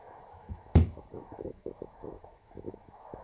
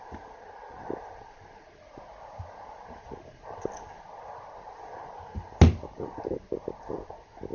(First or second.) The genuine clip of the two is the second